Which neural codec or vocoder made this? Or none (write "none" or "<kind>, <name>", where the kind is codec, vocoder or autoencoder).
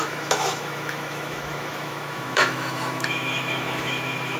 autoencoder, DAC-VAE